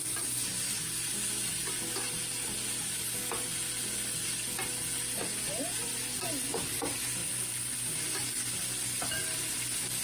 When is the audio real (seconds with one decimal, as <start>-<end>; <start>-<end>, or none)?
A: 0.0-10.0